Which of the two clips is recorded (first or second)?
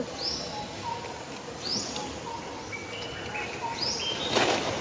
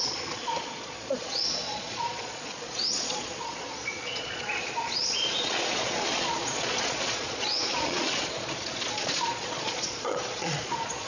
first